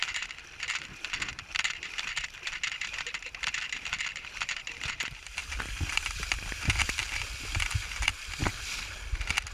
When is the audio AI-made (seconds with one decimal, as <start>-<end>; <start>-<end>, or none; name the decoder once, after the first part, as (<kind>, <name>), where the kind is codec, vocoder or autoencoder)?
8.4-9.0 (vocoder, BigVGAN v2)